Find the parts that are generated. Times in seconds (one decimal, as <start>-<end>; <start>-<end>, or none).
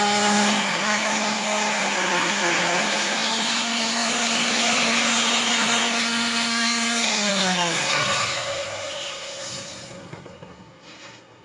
0.0-11.4